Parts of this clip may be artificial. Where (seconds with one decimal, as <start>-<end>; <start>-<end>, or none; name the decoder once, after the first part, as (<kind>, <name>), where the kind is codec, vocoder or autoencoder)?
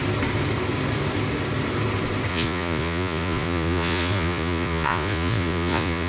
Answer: 2.3-6.1 (vocoder, Vocos)